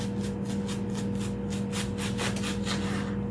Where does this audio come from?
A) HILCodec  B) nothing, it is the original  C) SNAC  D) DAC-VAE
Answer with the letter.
B